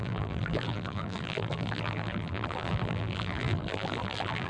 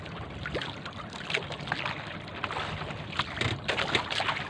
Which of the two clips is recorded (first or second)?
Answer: second